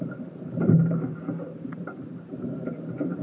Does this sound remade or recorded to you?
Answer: remade